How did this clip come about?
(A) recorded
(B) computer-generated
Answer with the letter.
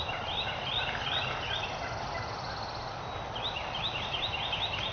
A